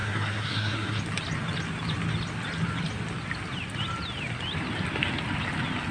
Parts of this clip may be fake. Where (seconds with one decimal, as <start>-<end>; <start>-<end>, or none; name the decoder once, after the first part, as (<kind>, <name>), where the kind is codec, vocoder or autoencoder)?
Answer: 0.0-1.0 (codec, SNAC)